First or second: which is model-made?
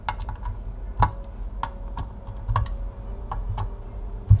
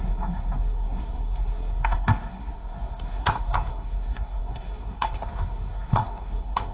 second